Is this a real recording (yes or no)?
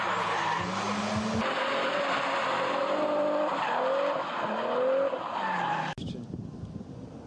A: yes